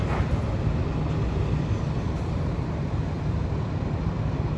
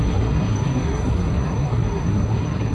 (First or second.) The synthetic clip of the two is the second